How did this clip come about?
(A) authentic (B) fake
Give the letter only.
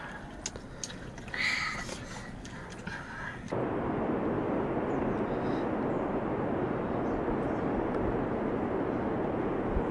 A